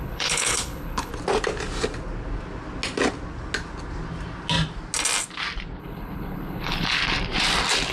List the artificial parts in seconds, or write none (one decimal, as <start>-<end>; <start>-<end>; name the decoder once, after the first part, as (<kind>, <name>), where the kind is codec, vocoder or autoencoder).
0.0-1.1 (codec, HILCodec); 5.8-7.0